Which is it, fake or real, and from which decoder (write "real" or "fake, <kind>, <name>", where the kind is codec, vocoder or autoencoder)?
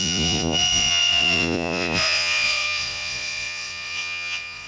fake, vocoder, Vocos